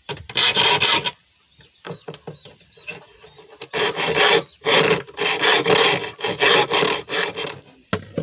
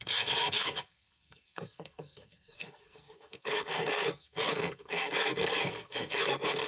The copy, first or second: second